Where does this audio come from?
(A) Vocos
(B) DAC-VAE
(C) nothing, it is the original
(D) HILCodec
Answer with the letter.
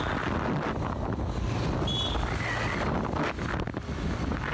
C